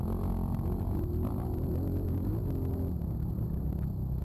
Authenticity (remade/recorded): recorded